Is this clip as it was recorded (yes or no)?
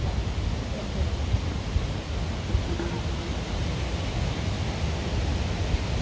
yes